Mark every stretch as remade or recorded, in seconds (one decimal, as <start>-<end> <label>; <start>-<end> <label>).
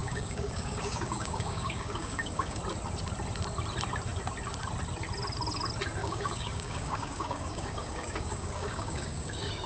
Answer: 0.0-2.6 remade; 2.6-6.0 recorded; 6.0-9.7 remade